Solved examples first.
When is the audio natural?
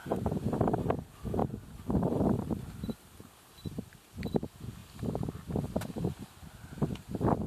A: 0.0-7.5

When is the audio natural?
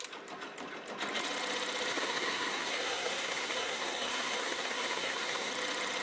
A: 0.0-1.9; 5.5-6.0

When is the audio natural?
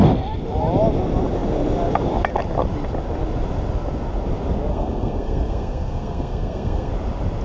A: 0.0-4.7; 6.9-7.4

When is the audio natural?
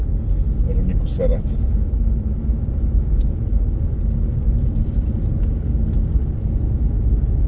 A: 0.0-1.3; 2.4-7.5